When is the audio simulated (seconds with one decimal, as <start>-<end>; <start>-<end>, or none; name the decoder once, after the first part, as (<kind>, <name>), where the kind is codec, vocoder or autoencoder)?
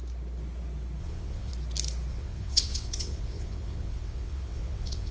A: 1.0-1.5 (vocoder, WaveNeXt); 2.1-5.1